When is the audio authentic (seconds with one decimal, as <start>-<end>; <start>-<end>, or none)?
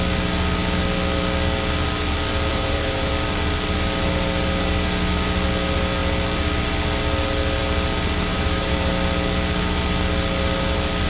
0.0-2.5; 3.1-8.3; 8.9-11.1